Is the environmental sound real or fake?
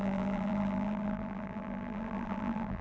fake